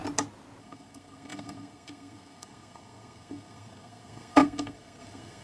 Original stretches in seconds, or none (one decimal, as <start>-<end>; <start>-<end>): 0.0-0.6